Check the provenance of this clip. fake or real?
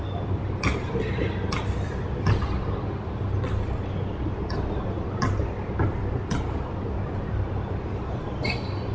real